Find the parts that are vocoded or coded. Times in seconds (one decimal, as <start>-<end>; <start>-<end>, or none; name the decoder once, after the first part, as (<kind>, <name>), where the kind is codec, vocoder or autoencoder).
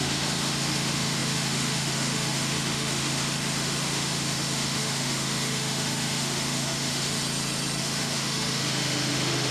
0.0-7.2 (autoencoder, DAC-VAE); 7.8-9.5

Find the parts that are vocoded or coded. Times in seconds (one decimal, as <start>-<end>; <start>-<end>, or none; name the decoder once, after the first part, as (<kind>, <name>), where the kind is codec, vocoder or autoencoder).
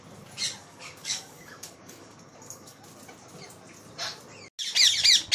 0.6-2.8 (codec, DAC)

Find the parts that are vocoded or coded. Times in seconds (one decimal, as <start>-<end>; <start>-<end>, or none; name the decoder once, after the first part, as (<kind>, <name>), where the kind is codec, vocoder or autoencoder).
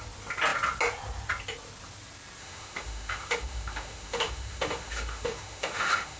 2.4-6.2 (autoencoder, DAC-VAE)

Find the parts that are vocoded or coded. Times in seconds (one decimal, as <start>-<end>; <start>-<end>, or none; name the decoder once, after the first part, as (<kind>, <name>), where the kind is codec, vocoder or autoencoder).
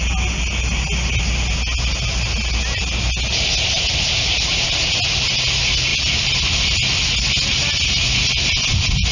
5.9-7.0 (vocoder, BigVGAN v2)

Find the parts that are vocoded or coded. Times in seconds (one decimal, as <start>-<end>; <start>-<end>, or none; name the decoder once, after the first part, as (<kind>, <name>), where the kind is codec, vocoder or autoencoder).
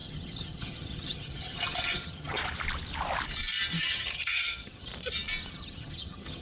0.0-2.4 (vocoder, HiFi-GAN); 3.8-4.9; 5.5-6.4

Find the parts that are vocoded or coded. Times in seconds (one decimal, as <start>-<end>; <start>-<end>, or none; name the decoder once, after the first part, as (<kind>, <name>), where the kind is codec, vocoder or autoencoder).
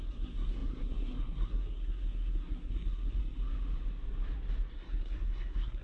0.0-3.2 (codec, SNAC); 4.7-5.8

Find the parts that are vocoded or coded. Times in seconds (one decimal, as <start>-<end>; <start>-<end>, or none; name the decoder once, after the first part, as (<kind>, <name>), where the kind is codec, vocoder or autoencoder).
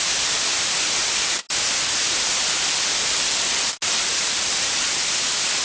3.0-3.5 (vocoder, BigVGAN v2)